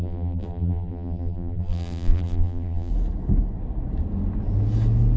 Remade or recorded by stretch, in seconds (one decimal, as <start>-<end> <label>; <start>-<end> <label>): 0.0-2.9 remade; 2.9-5.2 recorded